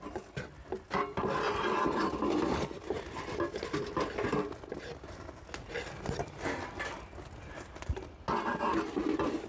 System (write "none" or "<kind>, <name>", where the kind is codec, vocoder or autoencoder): none